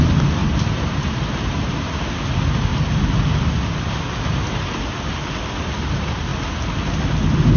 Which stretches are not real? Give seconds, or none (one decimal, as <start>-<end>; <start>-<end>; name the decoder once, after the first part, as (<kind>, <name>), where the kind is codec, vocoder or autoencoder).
0.4-1.7 (vocoder, BigVGAN v2); 2.7-4.8

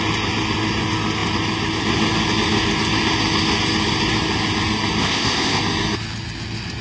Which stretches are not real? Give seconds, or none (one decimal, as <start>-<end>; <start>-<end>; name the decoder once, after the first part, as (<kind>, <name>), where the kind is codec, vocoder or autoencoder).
5.0-5.6 (codec, ZipCodec)

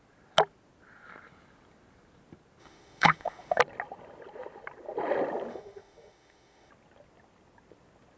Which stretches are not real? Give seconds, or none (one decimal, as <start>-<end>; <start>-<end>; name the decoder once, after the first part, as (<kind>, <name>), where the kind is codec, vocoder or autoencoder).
2.6-3.6 (autoencoder, DAC-VAE); 5.5-6.7

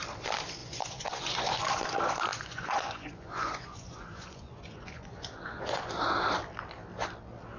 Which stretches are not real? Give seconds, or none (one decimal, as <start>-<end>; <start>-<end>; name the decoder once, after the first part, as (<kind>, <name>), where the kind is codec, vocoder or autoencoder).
0.6-1.6 (vocoder, Vocos); 2.3-5.9

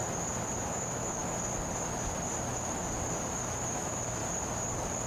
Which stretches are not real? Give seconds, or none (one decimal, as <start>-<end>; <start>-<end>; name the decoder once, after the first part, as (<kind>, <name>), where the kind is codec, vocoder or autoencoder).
0.6-1.2 (autoencoder, DAC-VAE); 3.7-4.2

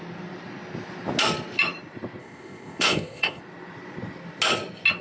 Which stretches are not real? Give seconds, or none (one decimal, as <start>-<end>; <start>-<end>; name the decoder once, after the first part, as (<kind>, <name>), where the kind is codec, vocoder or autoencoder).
2.2-3.4 (codec, ZipCodec)

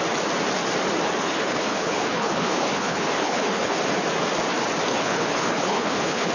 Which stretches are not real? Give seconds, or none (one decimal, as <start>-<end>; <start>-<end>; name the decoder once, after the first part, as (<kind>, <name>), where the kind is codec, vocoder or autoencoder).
1.2-3.8 (codec, HILCodec); 4.9-6.3